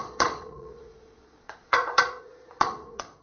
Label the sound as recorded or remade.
remade